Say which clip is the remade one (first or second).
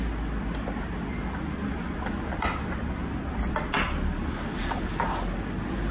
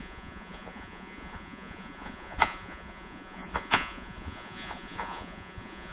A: second